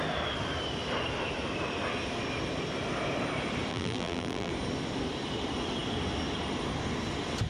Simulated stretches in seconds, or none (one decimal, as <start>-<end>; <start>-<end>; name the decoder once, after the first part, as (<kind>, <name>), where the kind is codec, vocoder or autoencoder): 3.7-4.5 (vocoder, BigVGAN v2)

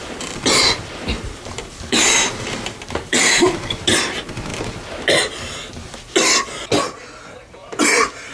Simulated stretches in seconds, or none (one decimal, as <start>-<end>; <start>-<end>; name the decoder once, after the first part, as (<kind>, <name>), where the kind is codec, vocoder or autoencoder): 0.0-3.9 (vocoder, BigVGAN v2)

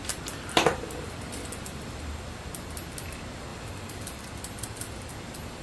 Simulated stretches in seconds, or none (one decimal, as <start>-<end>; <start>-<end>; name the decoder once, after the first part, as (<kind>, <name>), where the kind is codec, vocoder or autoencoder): 0.0-2.5 (vocoder, BigVGAN v2); 3.5-4.3